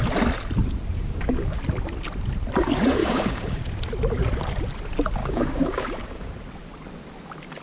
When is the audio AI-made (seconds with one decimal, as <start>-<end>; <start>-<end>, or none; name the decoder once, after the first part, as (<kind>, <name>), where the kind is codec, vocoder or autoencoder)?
1.0-1.6 (codec, DAC); 3.0-3.6; 5.2-6.3